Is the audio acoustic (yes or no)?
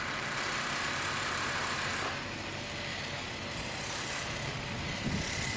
yes